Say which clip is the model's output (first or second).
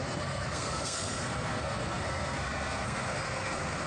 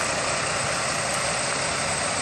first